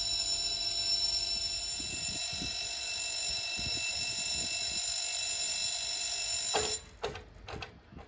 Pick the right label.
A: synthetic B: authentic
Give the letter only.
B